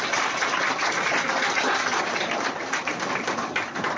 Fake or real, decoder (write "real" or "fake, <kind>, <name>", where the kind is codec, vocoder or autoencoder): real